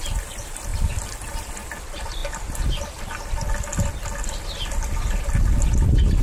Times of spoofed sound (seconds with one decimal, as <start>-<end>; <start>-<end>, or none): none